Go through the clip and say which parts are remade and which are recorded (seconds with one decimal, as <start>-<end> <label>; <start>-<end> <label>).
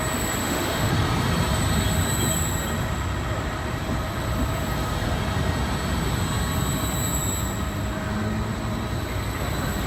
0.0-0.4 recorded; 0.4-0.9 remade; 0.9-9.9 recorded